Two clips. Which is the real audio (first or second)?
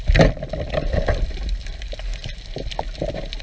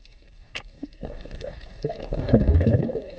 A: first